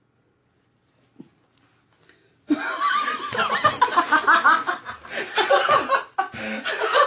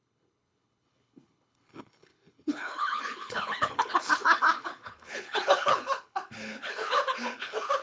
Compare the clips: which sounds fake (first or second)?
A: second